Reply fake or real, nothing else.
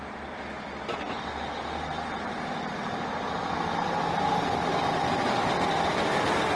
fake